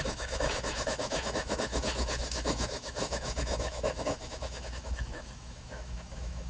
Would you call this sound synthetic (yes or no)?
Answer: yes